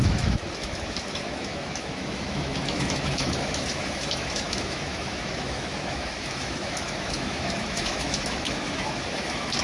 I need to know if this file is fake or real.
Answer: fake